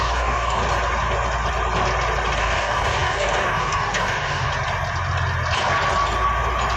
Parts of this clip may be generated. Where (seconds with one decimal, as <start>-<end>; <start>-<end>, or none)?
0.0-0.6; 2.4-4.5